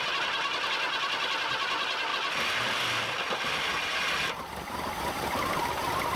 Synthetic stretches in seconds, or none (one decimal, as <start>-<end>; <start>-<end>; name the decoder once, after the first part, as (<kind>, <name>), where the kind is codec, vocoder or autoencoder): none